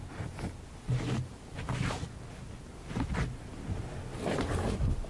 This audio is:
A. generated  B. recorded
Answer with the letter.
B